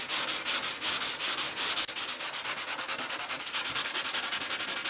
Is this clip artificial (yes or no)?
no